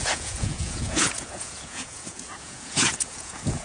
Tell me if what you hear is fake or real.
fake